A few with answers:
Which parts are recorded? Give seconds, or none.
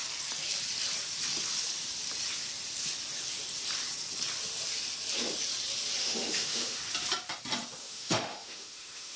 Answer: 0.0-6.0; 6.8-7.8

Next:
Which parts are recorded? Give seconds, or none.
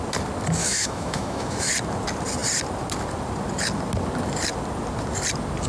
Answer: 0.0-0.6; 1.7-5.7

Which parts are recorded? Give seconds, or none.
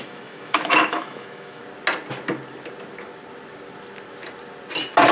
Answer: 1.6-5.1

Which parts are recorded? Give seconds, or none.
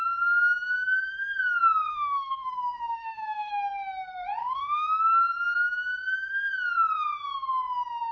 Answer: 0.0-1.9; 3.5-4.4; 5.0-8.1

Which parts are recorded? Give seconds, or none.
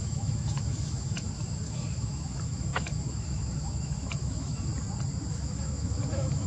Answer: 4.7-5.3